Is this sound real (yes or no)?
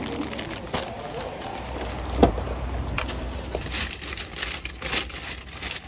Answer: yes